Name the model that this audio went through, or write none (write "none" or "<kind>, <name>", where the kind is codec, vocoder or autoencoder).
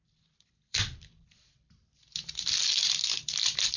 vocoder, BigVGAN v2